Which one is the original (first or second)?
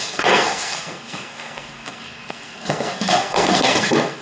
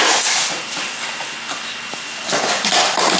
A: second